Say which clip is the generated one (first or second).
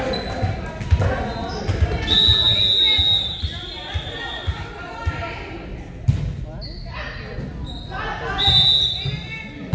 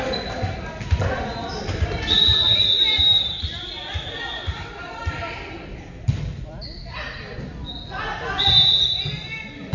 second